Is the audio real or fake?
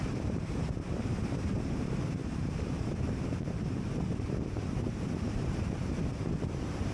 fake